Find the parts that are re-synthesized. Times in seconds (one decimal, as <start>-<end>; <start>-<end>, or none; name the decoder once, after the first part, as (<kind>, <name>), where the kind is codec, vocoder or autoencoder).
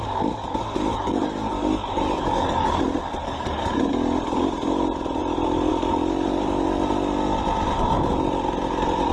0.9-2.8 (codec, DAC); 3.2-3.9